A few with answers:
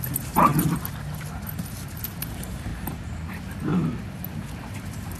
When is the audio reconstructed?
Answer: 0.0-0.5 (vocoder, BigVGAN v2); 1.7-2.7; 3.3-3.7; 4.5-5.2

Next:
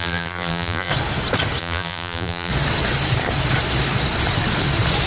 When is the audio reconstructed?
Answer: 0.0-0.9 (vocoder, BigVGAN v2); 1.6-2.5

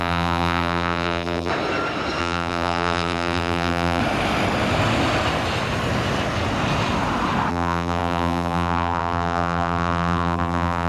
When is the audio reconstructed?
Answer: 0.0-1.5 (vocoder, BigVGAN v2); 2.2-4.0; 7.5-10.9

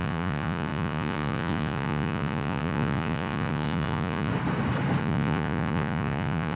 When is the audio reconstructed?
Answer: 0.0-4.3 (vocoder, Vocos); 5.0-6.6